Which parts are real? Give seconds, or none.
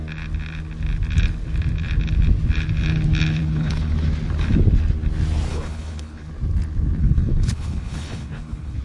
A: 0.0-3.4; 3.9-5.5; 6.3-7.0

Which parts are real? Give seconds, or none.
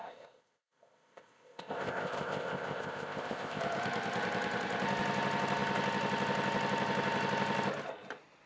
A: 3.6-8.5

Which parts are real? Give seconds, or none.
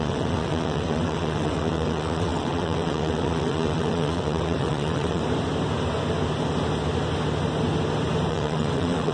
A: 5.2-8.3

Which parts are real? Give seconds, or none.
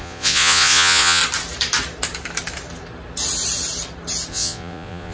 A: 1.2-4.3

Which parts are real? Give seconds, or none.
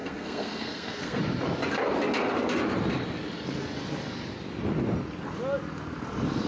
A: 1.2-6.5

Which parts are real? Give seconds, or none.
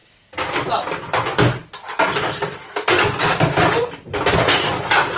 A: 0.0-5.2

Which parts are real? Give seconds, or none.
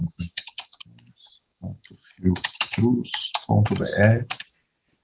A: 0.8-1.4; 4.4-5.0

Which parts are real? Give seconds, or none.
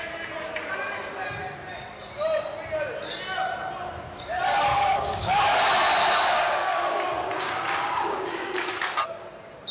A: 0.0-4.7; 5.4-6.0; 8.8-9.7